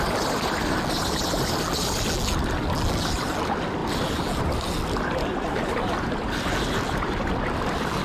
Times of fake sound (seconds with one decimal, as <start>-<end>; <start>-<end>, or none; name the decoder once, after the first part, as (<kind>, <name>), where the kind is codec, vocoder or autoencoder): none